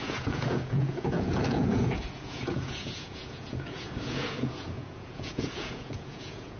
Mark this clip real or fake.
fake